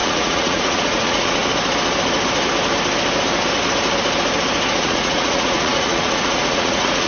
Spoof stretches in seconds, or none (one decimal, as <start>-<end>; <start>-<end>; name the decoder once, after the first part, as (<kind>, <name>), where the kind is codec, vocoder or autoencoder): 0.0-1.4 (vocoder, Vocos); 4.8-7.1